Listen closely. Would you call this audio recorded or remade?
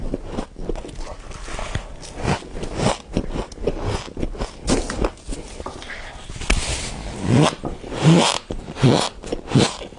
recorded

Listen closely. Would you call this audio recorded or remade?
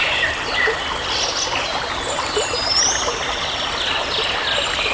recorded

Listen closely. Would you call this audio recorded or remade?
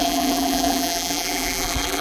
remade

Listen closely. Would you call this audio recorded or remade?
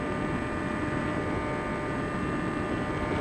recorded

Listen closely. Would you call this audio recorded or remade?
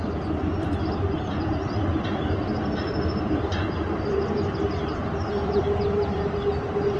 remade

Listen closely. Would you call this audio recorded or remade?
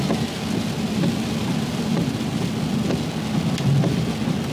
recorded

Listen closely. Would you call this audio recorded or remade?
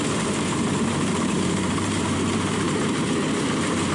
remade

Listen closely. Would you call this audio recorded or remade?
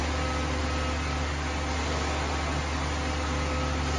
recorded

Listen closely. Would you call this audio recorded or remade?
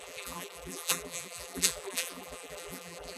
remade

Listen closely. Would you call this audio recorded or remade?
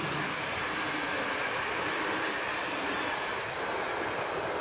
remade